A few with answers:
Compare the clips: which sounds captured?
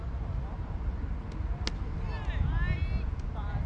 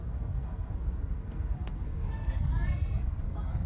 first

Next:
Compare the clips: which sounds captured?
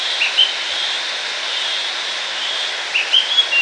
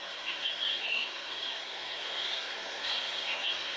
first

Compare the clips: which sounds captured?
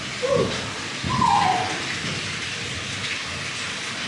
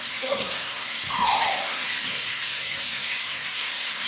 first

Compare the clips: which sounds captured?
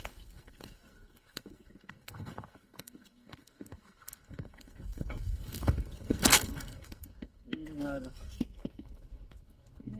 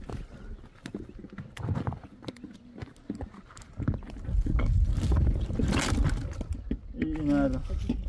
second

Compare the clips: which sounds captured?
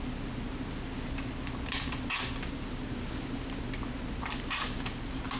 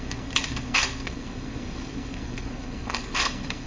first